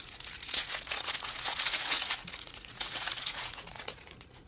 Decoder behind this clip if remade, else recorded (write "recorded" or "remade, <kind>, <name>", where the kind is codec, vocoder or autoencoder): remade, vocoder, Vocos